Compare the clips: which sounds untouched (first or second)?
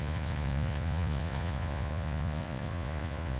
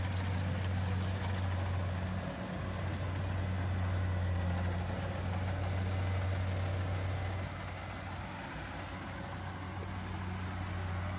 second